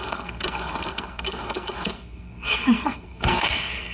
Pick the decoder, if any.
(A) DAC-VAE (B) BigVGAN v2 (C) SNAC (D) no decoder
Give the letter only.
C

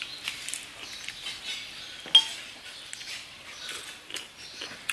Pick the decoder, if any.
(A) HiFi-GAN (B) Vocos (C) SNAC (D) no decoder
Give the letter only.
D